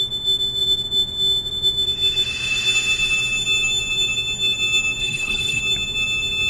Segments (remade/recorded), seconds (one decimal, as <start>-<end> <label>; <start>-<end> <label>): 0.0-5.0 recorded; 5.0-5.6 remade; 5.6-6.5 recorded